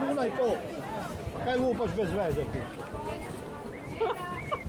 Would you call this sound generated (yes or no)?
no